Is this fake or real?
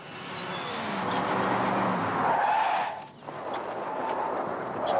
real